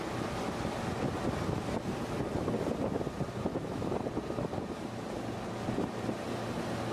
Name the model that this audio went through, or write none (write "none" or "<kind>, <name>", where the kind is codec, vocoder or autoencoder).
none